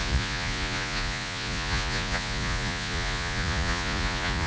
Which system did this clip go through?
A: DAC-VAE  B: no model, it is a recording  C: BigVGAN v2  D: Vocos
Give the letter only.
D